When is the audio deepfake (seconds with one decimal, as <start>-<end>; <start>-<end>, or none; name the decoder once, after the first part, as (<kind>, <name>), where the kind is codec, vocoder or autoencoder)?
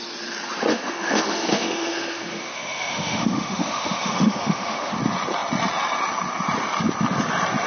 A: 0.7-4.9 (autoencoder, DAC-VAE)